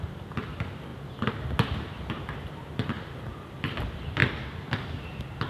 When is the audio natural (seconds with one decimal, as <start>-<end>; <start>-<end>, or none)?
0.0-5.5